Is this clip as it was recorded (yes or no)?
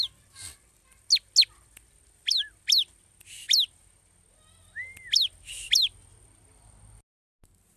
yes